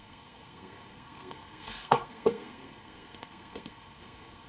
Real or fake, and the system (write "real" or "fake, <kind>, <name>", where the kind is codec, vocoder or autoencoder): fake, codec, SNAC